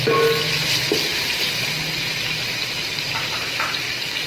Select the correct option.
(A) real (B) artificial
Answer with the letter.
A